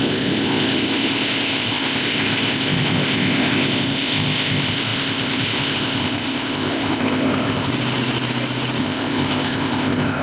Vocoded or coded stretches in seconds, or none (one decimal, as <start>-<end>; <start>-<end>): 0.0-7.7; 8.8-10.2